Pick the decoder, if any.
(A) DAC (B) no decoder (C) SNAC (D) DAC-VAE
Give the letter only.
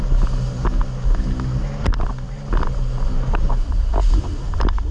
B